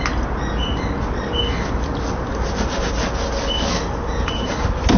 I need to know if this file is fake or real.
real